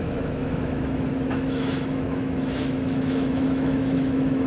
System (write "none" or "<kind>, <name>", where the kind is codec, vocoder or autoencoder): autoencoder, DAC-VAE